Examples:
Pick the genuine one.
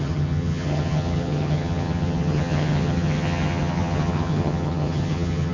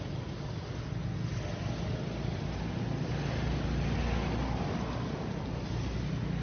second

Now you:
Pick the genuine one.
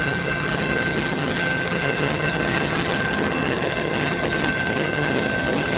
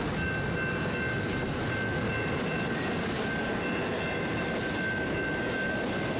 second